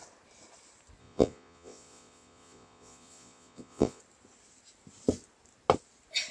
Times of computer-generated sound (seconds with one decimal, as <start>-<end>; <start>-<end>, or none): 1.0-4.0